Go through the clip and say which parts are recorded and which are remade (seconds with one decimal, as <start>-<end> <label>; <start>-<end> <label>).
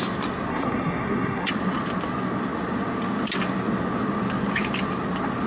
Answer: 0.0-0.5 recorded; 0.5-1.5 remade; 1.5-5.5 recorded